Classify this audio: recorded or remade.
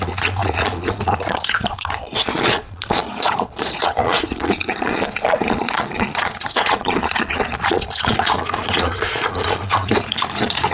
remade